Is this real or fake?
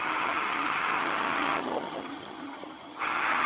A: fake